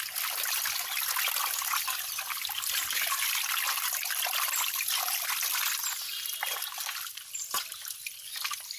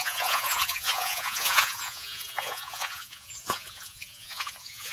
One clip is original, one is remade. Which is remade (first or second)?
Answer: second